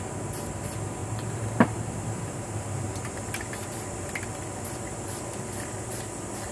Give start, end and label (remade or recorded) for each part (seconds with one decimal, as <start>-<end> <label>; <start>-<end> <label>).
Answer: 0.0-1.0 recorded; 1.0-3.1 remade; 3.1-6.5 recorded